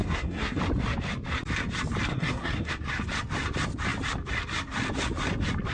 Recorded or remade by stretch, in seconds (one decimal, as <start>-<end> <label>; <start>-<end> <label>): 0.0-0.6 remade; 0.6-2.1 recorded; 2.1-2.7 remade; 2.7-5.7 recorded